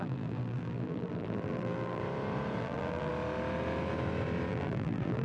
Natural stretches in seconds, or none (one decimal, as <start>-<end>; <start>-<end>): 2.0-2.6; 3.1-4.5